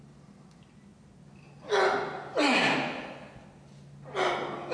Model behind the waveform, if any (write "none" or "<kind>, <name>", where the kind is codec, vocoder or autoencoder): none